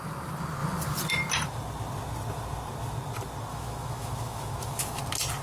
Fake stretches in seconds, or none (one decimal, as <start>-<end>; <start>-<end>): 3.5-5.0